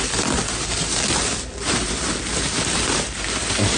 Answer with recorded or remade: recorded